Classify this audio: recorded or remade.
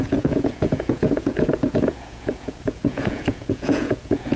remade